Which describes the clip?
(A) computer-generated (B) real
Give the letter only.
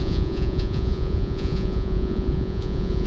A